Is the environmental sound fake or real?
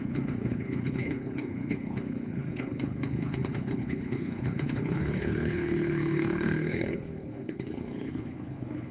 fake